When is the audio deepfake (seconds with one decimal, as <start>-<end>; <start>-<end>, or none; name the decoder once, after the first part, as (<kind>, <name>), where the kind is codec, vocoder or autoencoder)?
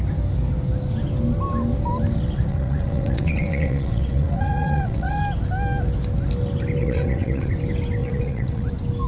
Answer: 2.5-5.2 (vocoder, WaveNeXt); 6.8-7.5; 8.0-8.7